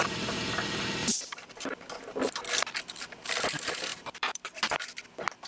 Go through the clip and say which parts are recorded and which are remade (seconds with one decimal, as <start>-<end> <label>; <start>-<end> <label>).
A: 0.0-1.0 recorded; 1.0-1.5 remade; 1.5-3.9 recorded; 3.9-4.6 remade; 4.6-5.5 recorded